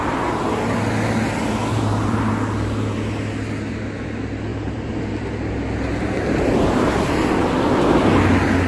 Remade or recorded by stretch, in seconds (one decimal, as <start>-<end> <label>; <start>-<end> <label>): 0.0-1.7 recorded; 1.7-2.3 remade; 2.3-4.5 recorded; 4.5-5.0 remade; 5.0-8.7 recorded